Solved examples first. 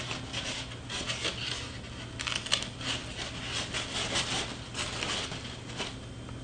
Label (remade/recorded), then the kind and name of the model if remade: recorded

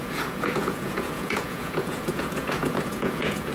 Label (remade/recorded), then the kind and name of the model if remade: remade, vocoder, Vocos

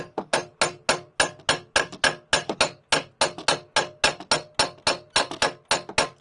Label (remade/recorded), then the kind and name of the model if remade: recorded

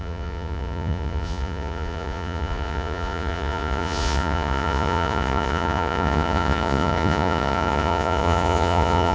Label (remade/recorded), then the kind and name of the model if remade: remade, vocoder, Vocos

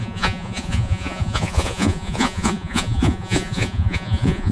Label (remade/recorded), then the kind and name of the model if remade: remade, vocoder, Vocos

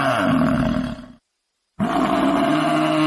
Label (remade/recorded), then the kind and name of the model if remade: recorded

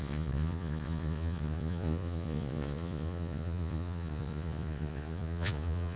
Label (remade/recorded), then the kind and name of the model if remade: remade, vocoder, Vocos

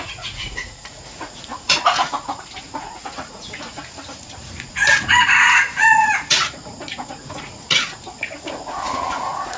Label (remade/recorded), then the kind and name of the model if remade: remade, vocoder, Vocos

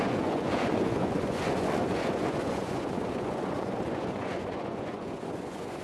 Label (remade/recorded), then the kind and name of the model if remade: remade, vocoder, Vocos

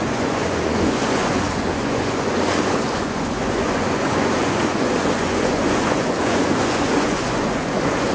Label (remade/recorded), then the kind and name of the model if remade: remade, vocoder, Vocos